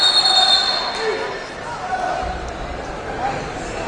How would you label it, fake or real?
real